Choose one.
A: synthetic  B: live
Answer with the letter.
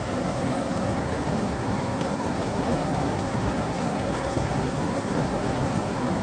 A